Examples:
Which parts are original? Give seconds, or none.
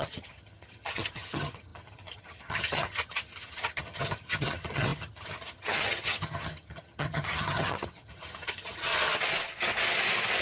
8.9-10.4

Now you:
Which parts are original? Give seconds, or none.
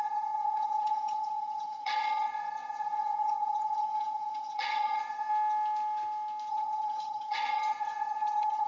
5.3-6.5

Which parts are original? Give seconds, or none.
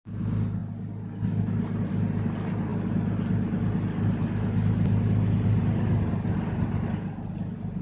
0.0-7.8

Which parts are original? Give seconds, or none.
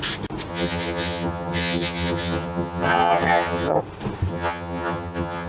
0.0-0.5; 3.8-4.3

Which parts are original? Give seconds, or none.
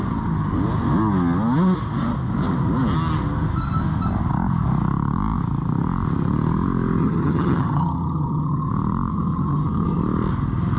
0.0-7.0; 8.7-9.1; 10.0-10.8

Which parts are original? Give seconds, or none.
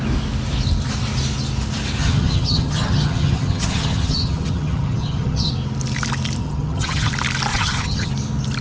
0.0-2.0; 5.5-6.4; 7.1-7.5; 8.1-8.6